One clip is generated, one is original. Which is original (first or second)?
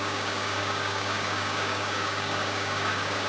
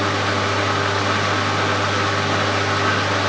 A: second